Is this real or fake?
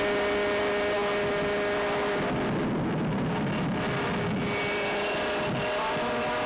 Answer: real